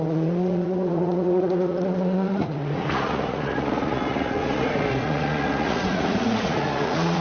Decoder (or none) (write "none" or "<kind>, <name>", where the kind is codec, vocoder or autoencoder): vocoder, Vocos